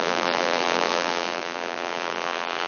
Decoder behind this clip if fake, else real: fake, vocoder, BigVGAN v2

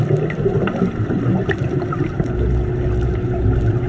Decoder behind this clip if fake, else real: real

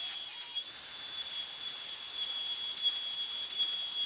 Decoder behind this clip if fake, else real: real